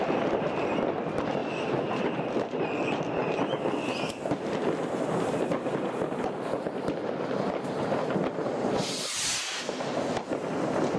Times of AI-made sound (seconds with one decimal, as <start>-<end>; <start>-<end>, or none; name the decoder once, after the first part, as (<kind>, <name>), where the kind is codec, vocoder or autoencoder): none